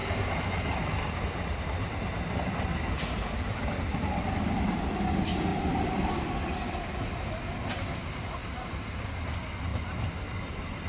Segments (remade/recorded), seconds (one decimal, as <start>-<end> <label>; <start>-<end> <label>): 0.0-5.5 recorded; 5.5-6.1 remade; 6.1-8.4 recorded; 8.4-9.0 remade; 9.0-9.7 recorded; 9.7-10.9 remade

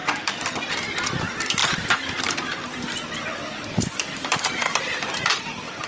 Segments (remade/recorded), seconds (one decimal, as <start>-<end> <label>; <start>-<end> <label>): 0.0-1.1 recorded; 1.1-2.6 remade; 2.6-3.4 recorded; 3.4-5.9 remade

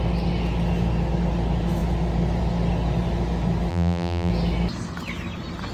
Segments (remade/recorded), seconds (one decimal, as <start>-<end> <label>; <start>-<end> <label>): 0.0-3.7 recorded; 3.7-4.3 remade; 4.3-5.7 recorded

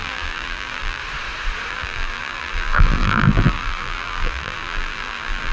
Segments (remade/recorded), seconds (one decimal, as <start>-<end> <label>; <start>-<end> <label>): 0.0-1.0 remade; 1.0-1.7 recorded; 1.7-5.5 remade

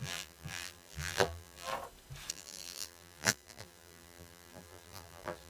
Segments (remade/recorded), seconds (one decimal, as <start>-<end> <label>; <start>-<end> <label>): 0.0-1.7 remade; 1.7-2.3 recorded; 2.3-5.5 remade

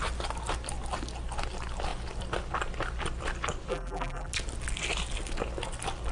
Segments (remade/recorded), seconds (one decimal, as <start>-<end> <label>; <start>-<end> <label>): 0.0-3.7 recorded; 3.7-4.3 remade; 4.3-6.1 recorded

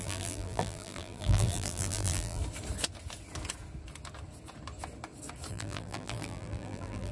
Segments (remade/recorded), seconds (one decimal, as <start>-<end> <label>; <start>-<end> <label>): 0.0-2.4 remade; 2.4-5.5 recorded; 5.5-7.1 remade